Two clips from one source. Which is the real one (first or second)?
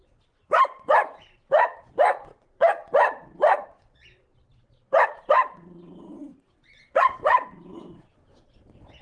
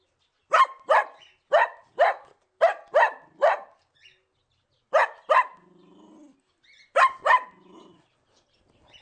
second